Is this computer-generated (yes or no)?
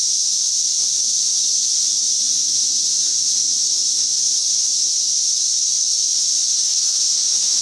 yes